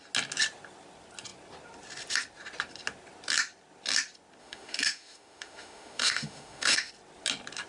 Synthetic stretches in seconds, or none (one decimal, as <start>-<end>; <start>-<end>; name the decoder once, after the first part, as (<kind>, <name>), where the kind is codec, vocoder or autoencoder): 4.4-6.9 (autoencoder, DAC-VAE)